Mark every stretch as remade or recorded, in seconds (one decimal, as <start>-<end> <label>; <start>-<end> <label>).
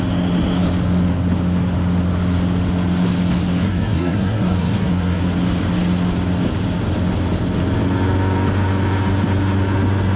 0.0-3.6 recorded; 3.6-5.2 remade; 5.2-10.2 recorded